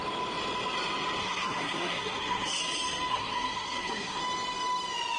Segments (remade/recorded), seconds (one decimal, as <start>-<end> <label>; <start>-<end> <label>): 0.0-1.2 recorded; 1.2-2.6 remade; 2.6-3.1 recorded; 3.1-4.2 remade; 4.2-5.2 recorded